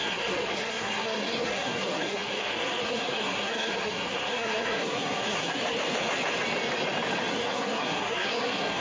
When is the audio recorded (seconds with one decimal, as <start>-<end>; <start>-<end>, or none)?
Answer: 5.6-7.3

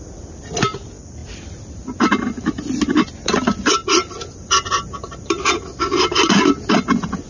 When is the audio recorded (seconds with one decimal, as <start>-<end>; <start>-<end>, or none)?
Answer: 0.0-7.3

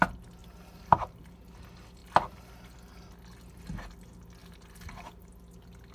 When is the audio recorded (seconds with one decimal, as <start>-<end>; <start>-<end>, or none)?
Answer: 0.0-0.4; 1.2-4.4; 5.3-5.9